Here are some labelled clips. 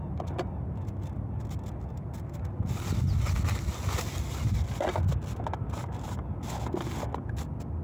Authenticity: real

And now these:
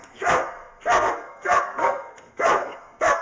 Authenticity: fake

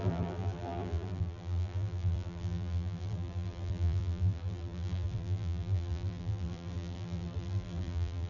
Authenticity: fake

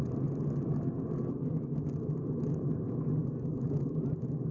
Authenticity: real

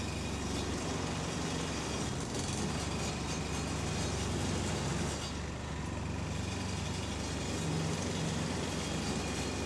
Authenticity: real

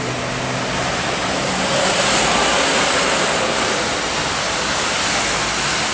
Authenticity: real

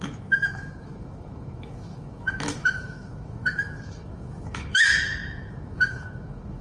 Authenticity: fake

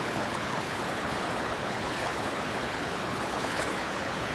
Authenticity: fake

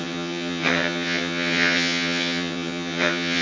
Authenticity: fake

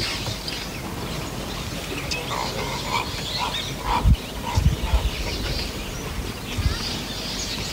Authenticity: real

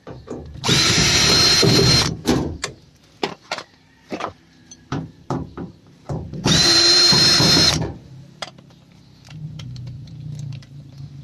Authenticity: fake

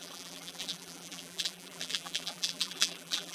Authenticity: fake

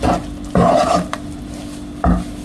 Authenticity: real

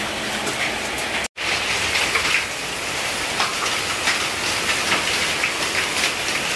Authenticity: real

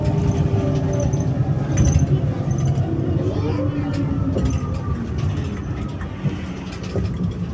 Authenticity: real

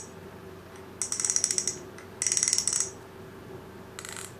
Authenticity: real